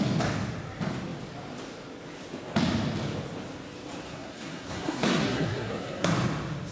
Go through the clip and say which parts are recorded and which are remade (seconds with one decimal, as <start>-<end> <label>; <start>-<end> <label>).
0.0-4.0 recorded; 4.0-6.1 remade; 6.1-6.7 recorded